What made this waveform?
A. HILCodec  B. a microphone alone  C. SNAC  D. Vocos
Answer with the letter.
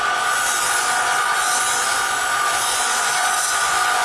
D